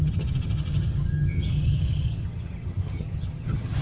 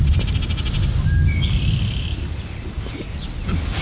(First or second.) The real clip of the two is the second